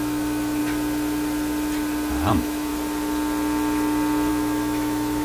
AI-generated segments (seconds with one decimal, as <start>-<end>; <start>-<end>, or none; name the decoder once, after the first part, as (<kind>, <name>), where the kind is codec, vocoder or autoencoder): 0.0-0.6 (autoencoder, DAC-VAE); 2.3-2.7; 4.3-5.2